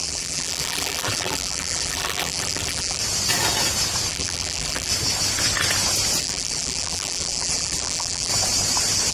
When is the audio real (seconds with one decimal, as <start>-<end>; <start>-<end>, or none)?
3.0-4.1; 4.9-6.2; 8.3-9.1

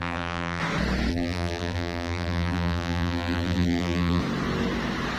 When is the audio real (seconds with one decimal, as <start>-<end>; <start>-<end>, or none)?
0.6-1.1; 4.2-5.2

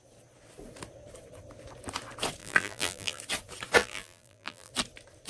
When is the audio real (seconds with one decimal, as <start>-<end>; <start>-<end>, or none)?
0.0-2.4; 3.2-3.8; 4.7-5.3

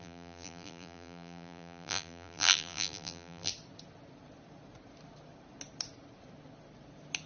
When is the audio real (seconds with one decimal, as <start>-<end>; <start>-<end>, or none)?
3.5-7.3

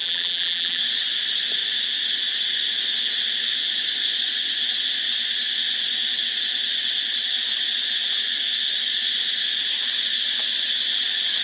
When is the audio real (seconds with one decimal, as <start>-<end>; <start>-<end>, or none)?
0.8-11.4

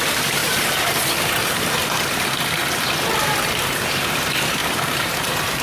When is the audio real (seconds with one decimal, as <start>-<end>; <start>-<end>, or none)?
2.6-3.2